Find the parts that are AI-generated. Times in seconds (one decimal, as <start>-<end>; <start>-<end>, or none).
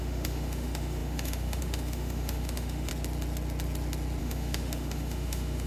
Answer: 0.0-2.9; 4.2-5.7